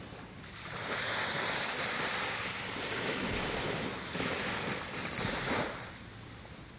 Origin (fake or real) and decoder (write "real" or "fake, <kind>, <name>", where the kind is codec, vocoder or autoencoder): fake, vocoder, BigVGAN v2